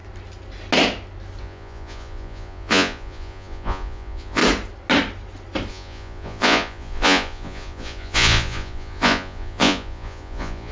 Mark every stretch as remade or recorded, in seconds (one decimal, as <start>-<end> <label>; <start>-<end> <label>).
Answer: 0.0-1.4 recorded; 1.4-4.4 remade; 4.4-5.7 recorded; 5.7-10.7 remade